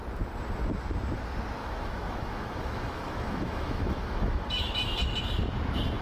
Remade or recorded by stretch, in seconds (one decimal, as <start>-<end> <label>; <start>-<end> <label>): 0.0-1.6 recorded; 1.6-5.2 remade; 5.2-6.0 recorded